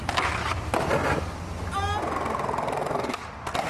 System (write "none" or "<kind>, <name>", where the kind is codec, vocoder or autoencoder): none